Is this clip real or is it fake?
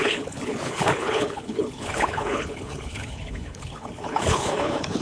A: fake